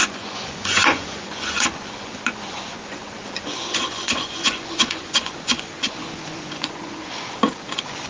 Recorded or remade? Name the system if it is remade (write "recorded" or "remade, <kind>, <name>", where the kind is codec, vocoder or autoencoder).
remade, vocoder, Vocos